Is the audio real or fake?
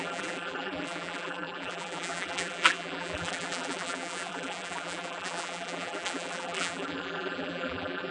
fake